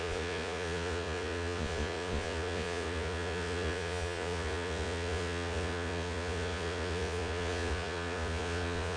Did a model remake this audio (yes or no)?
yes